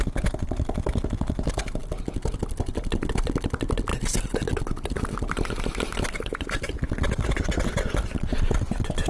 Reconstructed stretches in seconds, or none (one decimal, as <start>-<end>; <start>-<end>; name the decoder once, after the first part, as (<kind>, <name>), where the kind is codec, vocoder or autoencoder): none